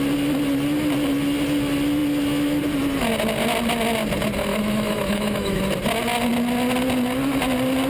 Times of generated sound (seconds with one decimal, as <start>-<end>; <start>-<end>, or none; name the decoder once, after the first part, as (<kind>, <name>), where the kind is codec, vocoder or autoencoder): 4.5-5.6 (autoencoder, DAC-VAE)